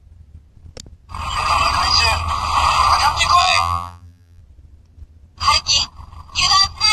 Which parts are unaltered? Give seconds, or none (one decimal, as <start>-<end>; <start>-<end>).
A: 0.0-3.4; 4.4-6.9